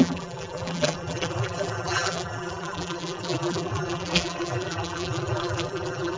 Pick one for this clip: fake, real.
fake